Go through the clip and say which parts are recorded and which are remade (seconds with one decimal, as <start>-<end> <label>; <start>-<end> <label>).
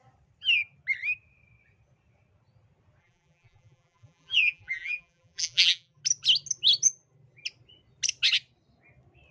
0.0-3.0 recorded; 3.0-6.0 remade; 6.0-9.3 recorded